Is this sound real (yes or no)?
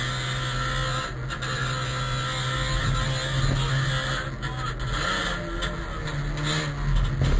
yes